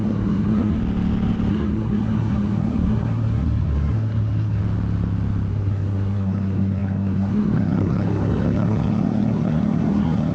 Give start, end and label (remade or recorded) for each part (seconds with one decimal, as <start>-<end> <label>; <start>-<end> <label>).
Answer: 0.0-0.8 remade; 0.8-1.5 recorded; 1.5-4.6 remade; 4.6-5.5 recorded; 5.5-10.3 remade